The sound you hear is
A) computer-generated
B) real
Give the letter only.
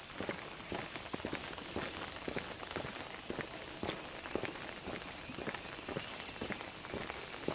B